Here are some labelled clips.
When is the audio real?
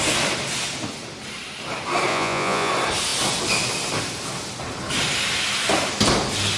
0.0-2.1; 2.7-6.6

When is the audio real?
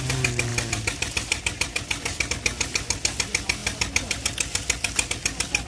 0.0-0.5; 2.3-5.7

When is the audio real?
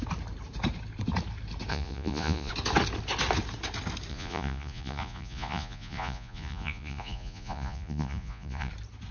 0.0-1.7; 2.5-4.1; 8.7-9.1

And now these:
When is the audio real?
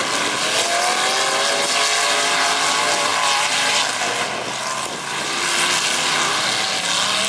0.0-7.3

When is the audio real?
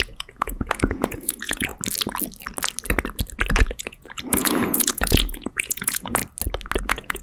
1.7-3.5; 6.2-6.8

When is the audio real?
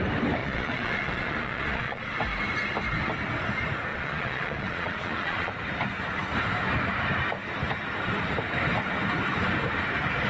0.0-0.4; 2.1-3.9; 5.5-10.3